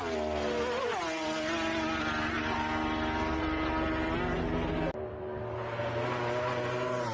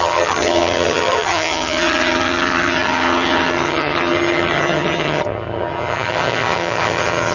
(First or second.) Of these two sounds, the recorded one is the first